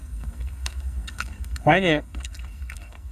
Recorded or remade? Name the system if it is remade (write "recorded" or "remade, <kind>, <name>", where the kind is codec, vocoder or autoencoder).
remade, codec, SNAC